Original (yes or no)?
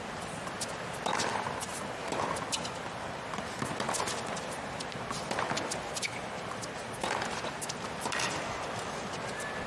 yes